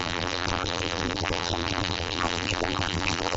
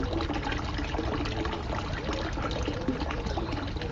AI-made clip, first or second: first